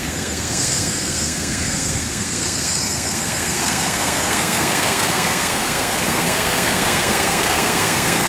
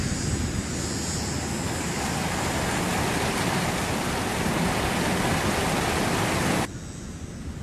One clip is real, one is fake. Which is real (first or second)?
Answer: second